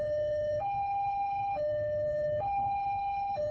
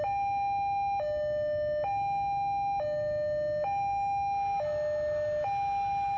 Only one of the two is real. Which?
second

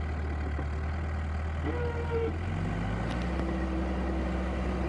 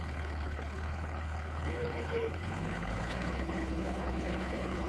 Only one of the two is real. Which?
first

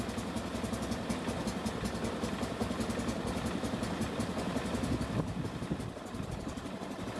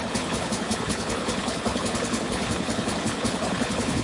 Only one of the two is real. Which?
first